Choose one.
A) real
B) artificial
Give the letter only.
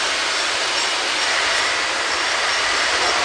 A